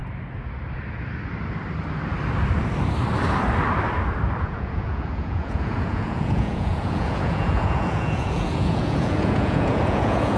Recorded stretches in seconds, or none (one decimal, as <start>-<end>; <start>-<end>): 0.0-4.4